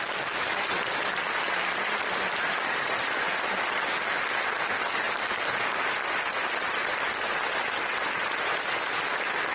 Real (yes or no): yes